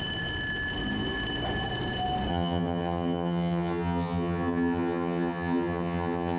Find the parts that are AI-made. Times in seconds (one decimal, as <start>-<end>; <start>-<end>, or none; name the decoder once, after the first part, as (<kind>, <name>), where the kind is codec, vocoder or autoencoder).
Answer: 2.3-6.4 (vocoder, HiFi-GAN)